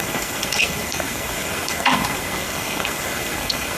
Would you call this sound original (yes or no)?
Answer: no